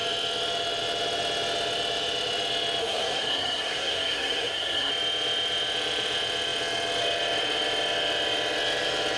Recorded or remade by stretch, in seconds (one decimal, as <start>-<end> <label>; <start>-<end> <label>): 0.0-2.8 recorded; 2.8-4.9 remade; 4.9-9.2 recorded